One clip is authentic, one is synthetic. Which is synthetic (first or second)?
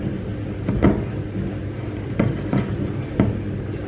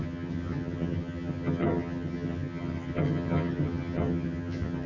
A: second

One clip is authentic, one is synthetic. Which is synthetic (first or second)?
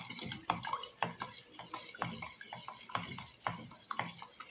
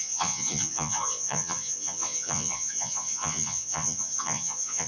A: second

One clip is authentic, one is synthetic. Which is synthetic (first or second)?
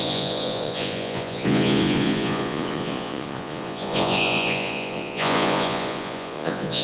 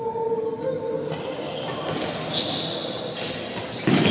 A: first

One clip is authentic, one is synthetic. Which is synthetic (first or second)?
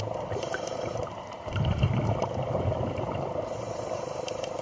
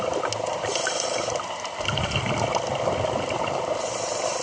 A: first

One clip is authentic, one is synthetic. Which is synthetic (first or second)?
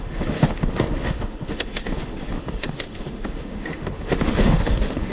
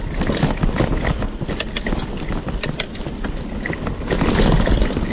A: first